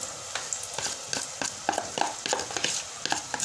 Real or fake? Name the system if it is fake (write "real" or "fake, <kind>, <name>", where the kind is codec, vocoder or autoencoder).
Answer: real